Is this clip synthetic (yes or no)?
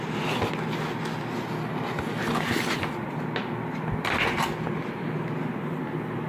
no